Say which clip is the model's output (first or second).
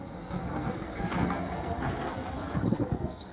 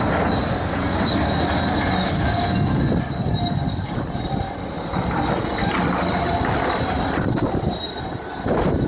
first